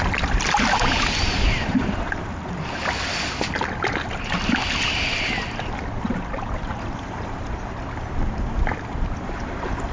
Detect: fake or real real